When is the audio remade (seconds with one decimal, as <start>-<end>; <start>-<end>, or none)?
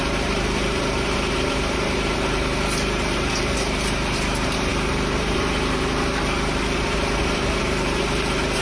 0.0-8.6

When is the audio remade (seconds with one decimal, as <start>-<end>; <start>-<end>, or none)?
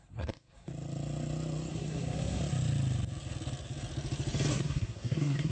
0.0-0.7; 1.7-2.4; 4.5-5.5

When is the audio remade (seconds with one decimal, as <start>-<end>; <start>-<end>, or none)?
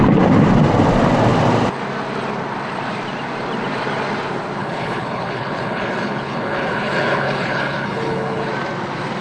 4.6-8.5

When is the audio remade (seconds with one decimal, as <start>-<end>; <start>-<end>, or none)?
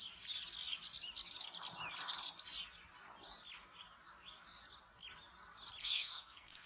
5.8-6.7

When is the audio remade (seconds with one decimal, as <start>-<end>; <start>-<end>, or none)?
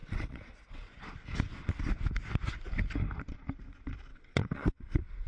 0.0-0.9; 4.1-5.3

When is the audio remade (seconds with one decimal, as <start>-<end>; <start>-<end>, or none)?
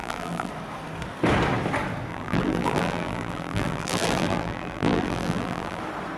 0.0-0.5; 2.1-5.8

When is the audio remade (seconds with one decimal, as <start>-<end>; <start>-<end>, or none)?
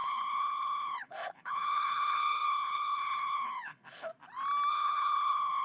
0.0-4.1; 4.7-5.6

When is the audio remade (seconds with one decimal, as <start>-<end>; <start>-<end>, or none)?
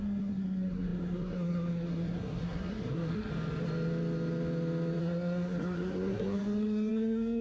0.0-3.3; 5.0-7.4